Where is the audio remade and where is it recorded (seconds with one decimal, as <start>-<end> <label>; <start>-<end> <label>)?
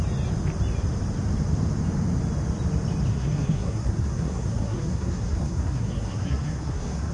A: 0.0-3.1 recorded; 3.1-7.1 remade